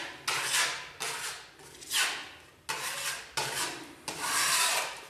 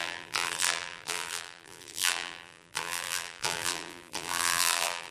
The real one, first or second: first